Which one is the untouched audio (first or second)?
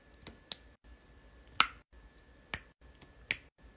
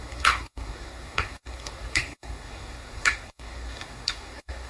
first